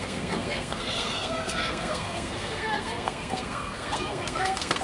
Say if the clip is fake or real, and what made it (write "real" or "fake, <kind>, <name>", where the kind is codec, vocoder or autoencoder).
fake, codec, SNAC